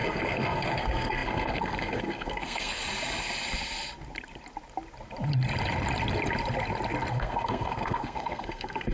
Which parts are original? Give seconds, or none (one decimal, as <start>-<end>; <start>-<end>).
2.8-7.1